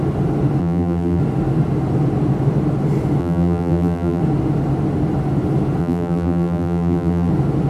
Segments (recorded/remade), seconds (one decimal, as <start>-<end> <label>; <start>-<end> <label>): 0.0-0.6 recorded; 0.6-1.2 remade; 1.2-3.2 recorded; 3.2-4.2 remade; 4.2-5.8 recorded; 5.8-7.3 remade; 7.3-7.7 recorded